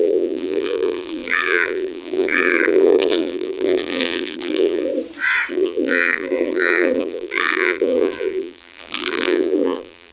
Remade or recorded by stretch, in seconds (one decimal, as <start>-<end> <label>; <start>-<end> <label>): 0.0-4.9 remade; 4.9-5.5 recorded; 5.5-10.1 remade